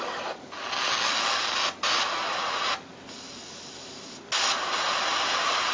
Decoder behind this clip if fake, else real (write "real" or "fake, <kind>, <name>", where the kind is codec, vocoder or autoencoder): real